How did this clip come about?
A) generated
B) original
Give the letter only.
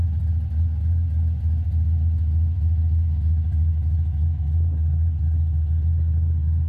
B